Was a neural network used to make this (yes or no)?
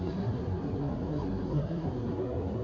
yes